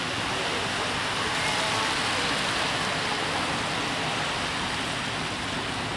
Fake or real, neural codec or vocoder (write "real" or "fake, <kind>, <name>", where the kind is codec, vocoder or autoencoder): real